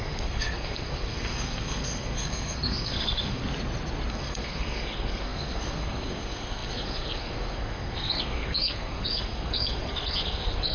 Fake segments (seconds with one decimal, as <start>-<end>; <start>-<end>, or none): 0.0-3.4; 4.1-10.7